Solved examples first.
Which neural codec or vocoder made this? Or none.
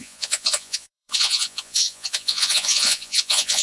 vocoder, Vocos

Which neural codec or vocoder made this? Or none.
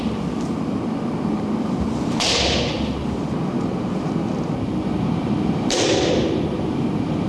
none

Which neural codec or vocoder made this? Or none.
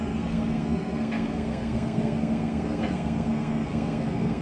codec, SNAC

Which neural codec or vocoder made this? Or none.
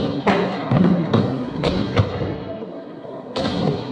codec, SNAC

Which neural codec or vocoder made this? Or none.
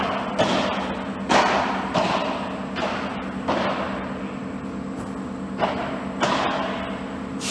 none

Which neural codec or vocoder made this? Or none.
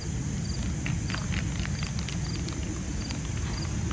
none